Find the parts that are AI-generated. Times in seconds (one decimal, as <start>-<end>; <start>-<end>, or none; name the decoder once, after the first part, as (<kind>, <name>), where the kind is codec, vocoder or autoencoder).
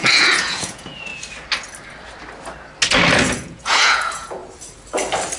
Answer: 0.0-1.1 (vocoder, Vocos); 3.2-4.4